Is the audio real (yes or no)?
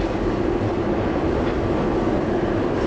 yes